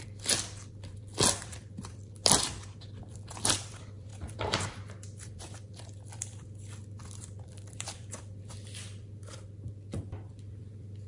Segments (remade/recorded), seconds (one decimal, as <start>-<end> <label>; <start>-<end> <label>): 0.0-11.1 remade